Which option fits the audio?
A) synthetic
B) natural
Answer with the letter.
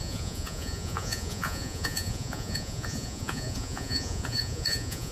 A